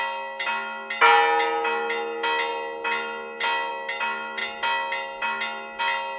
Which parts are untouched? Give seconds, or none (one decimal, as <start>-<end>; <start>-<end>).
0.0-6.2